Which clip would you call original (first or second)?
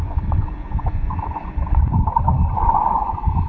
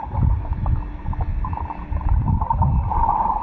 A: second